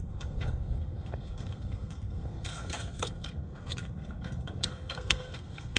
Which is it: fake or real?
fake